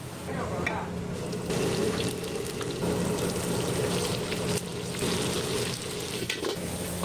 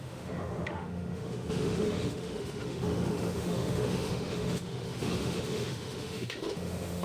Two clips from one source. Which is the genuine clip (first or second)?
first